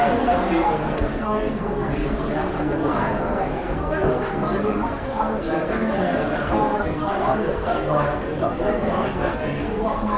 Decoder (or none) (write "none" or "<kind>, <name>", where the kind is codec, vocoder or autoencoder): codec, SNAC